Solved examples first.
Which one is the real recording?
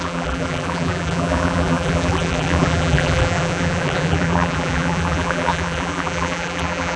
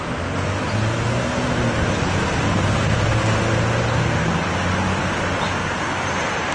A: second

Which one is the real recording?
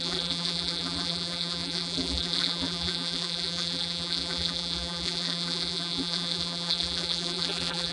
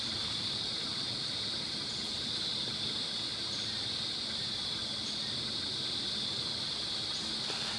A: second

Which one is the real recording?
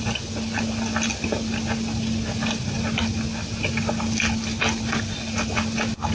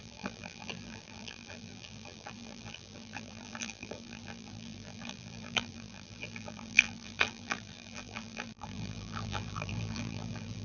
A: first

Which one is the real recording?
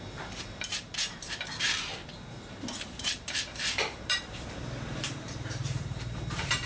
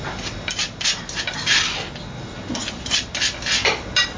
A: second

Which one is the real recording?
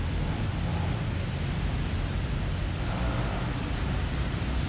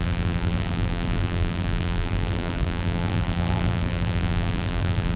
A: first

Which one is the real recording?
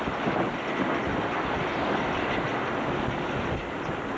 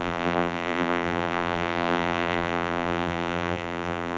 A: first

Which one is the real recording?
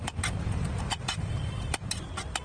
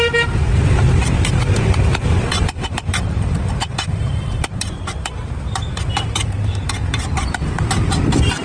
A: first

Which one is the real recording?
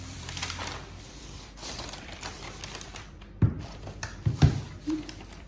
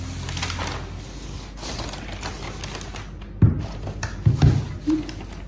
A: second